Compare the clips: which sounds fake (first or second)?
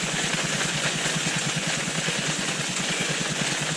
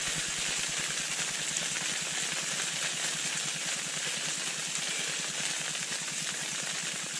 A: first